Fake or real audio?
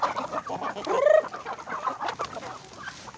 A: real